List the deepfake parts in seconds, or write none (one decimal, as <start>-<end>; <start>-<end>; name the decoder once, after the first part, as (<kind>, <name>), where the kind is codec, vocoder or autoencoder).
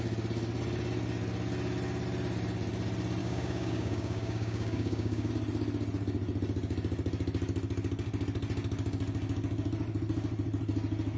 3.2-5.3 (codec, DAC)